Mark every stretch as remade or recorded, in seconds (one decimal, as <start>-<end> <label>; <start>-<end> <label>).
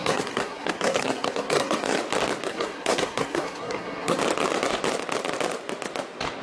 0.0-2.0 remade; 2.0-2.5 recorded; 2.5-4.2 remade; 4.2-6.4 recorded